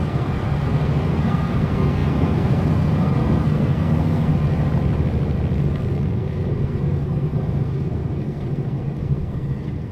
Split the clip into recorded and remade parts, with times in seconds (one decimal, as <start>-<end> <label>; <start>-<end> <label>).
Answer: 0.0-4.3 remade; 4.3-5.6 recorded; 5.6-9.9 remade